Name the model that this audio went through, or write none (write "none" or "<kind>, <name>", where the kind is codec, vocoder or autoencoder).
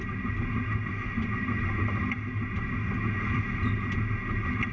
none